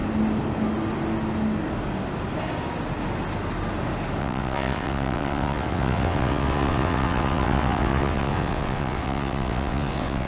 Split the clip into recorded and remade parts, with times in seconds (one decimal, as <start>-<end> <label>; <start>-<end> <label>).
0.0-4.2 recorded; 4.2-10.3 remade